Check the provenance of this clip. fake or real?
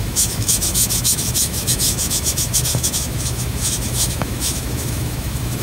fake